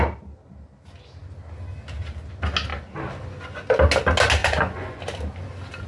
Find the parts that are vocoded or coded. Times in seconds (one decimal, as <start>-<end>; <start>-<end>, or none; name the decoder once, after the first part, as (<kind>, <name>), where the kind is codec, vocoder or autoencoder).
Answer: 4.4-5.0 (vocoder, Vocos)